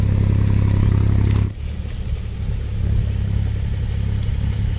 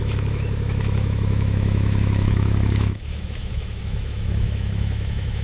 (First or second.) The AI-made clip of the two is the second